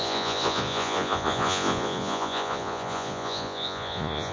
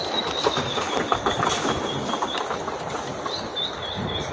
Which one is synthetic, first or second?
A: first